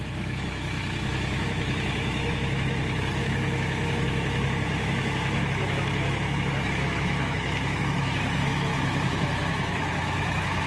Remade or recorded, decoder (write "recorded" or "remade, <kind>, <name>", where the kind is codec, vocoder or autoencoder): remade, autoencoder, DAC-VAE